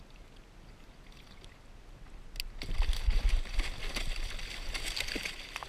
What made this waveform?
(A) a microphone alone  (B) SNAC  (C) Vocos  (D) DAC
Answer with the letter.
A